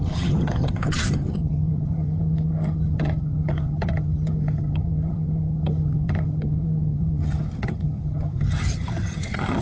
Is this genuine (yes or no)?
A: no